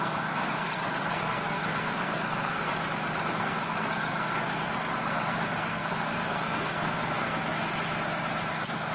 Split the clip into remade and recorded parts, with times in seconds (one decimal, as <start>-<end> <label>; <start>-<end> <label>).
0.0-2.7 remade; 2.7-3.3 recorded; 3.3-7.4 remade; 7.4-8.5 recorded; 8.5-8.9 remade